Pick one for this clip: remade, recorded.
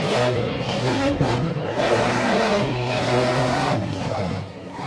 remade